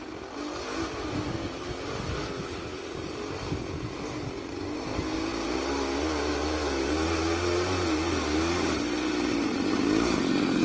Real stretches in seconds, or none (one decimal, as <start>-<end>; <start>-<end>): 0.0-10.6